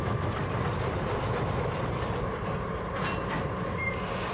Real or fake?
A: real